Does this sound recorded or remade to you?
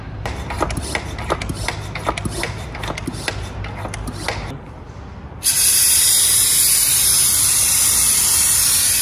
recorded